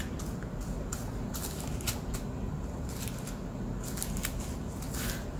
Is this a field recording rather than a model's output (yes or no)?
yes